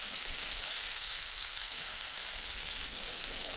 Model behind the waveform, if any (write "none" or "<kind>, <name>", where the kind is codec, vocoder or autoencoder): codec, SNAC